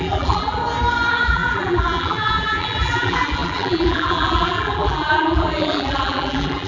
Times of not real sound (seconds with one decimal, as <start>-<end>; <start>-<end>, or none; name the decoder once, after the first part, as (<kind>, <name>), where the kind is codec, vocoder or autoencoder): 0.0-0.6 (vocoder, BigVGAN v2); 1.1-6.7